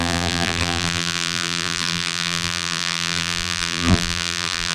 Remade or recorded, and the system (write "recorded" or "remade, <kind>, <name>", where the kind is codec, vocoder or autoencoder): remade, vocoder, BigVGAN v2